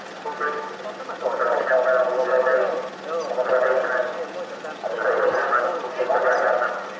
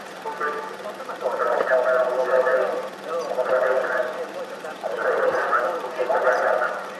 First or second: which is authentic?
first